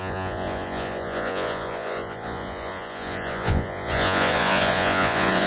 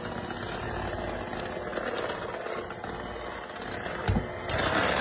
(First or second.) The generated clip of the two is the first